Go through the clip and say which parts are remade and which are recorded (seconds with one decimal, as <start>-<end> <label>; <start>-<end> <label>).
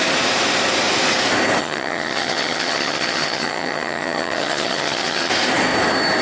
0.0-1.6 recorded; 1.6-5.3 remade; 5.3-6.2 recorded